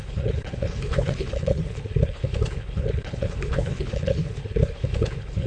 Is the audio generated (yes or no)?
yes